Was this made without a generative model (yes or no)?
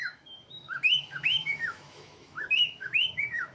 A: no